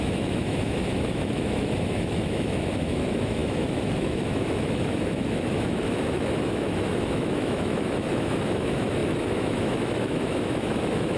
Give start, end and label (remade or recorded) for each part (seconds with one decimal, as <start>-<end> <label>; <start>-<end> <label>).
0.0-11.2 remade

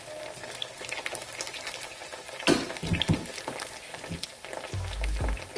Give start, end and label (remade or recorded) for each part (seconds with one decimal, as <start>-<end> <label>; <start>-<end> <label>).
0.0-5.6 recorded